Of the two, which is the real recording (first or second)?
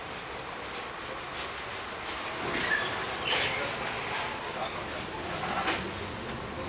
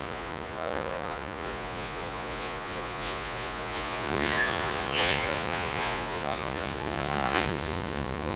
first